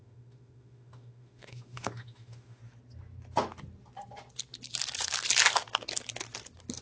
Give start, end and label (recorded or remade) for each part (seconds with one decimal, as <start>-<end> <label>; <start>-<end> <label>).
0.0-2.6 remade; 2.6-6.8 recorded